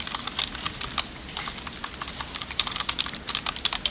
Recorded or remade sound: remade